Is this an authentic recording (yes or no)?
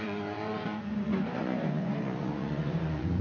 no